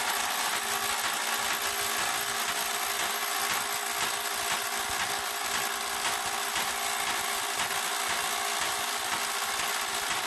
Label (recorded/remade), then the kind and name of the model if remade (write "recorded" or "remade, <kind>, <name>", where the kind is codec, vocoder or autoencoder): recorded